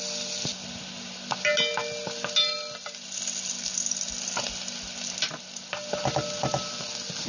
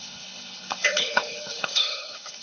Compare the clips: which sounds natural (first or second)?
first